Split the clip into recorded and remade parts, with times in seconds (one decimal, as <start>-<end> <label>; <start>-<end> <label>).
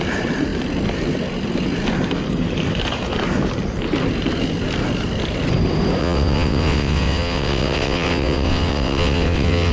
0.0-6.0 recorded; 6.0-9.7 remade